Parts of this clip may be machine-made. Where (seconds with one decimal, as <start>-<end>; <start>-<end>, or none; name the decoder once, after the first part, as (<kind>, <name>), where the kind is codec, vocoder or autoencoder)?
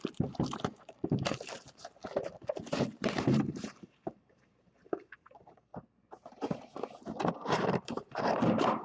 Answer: 0.0-2.0 (vocoder, BigVGAN v2); 2.6-5.7; 7.3-8.8